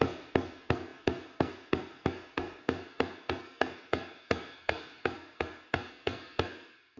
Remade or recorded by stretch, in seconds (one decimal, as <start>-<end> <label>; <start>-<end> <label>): 0.0-7.0 remade